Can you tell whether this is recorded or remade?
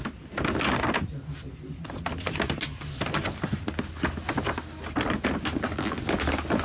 recorded